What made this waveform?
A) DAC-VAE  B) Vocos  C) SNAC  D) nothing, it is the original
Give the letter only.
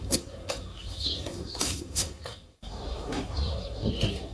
C